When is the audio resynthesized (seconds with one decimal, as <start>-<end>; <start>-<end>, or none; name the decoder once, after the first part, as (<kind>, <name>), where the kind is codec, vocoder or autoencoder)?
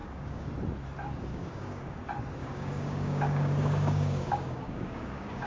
0.0-0.5 (codec, DAC); 1.3-2.0; 2.4-5.5